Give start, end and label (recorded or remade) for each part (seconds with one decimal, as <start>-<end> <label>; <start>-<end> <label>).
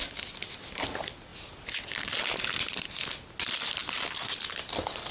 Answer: 0.0-5.1 recorded